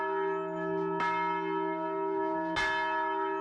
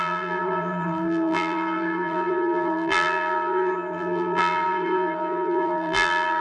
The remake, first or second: second